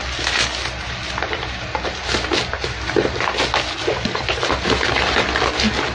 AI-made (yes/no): no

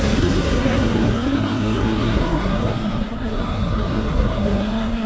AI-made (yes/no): yes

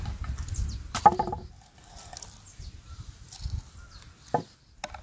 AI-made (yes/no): no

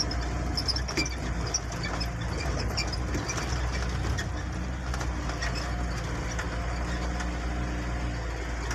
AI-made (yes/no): no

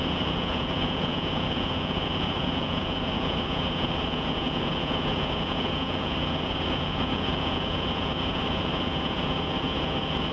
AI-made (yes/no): yes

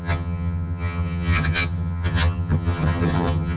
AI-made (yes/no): yes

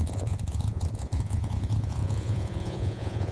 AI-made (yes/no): yes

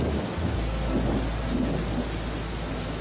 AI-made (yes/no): no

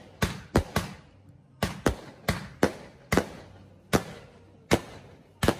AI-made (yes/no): no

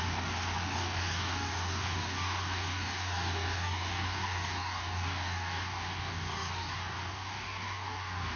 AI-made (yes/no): yes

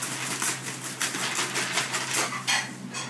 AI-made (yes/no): no